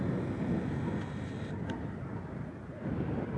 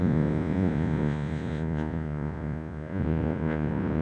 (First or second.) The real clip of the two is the first